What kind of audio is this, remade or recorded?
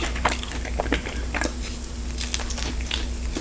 recorded